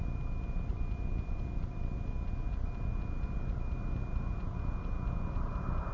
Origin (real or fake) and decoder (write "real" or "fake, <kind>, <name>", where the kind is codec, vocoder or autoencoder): real